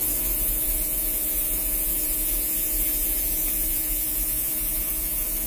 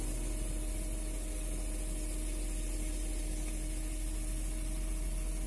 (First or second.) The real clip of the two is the second